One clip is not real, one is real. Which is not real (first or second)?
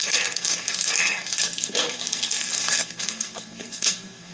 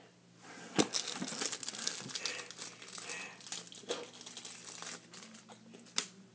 first